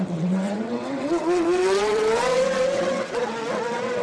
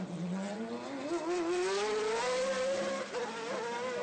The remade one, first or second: first